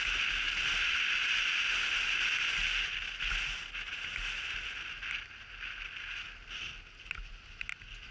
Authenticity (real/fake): real